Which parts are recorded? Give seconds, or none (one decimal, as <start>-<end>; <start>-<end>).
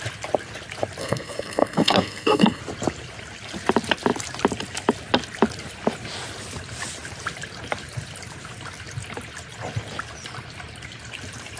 0.0-1.0; 2.6-11.6